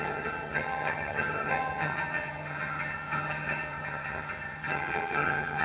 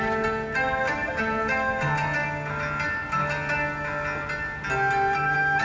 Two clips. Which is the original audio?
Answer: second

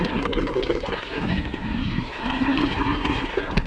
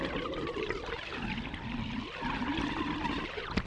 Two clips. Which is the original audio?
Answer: second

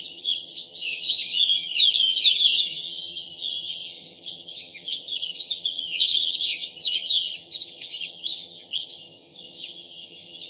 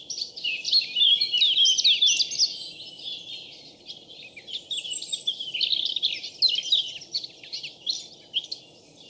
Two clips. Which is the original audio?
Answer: second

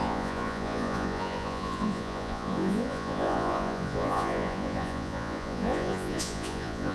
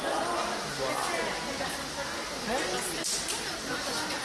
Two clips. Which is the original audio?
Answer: second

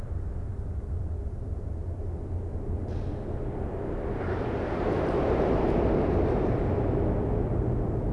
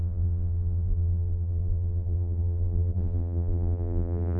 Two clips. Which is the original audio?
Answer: first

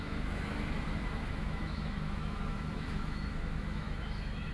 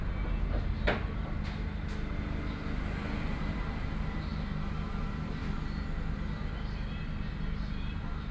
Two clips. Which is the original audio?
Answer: second